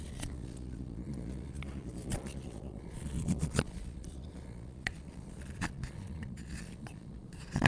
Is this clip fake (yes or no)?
yes